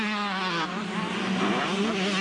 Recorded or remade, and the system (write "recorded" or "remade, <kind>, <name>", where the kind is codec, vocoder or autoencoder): recorded